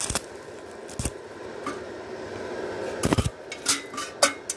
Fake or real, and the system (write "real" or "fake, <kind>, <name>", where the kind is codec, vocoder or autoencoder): real